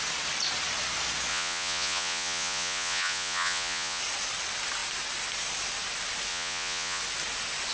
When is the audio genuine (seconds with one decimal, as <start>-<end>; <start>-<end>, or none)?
0.0-1.3; 4.0-6.3; 7.0-7.7